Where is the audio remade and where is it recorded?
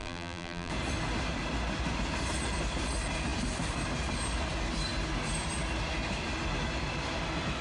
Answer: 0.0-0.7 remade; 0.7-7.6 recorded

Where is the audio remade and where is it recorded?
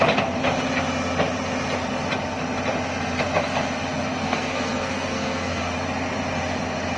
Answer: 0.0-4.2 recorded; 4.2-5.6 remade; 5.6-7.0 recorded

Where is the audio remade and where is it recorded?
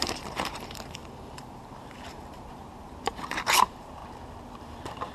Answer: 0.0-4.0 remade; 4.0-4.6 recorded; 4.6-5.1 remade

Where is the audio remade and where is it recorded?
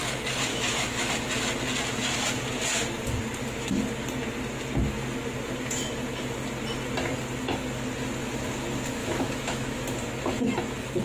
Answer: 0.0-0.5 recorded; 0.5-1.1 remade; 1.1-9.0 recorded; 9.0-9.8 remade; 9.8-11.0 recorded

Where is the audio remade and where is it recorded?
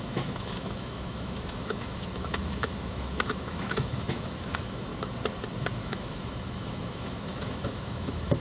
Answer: 0.0-4.9 remade; 4.9-5.7 recorded; 5.7-8.4 remade